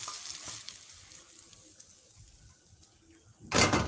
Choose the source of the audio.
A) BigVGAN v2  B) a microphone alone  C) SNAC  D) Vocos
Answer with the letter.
B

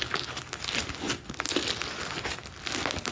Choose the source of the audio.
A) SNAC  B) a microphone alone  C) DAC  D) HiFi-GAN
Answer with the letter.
B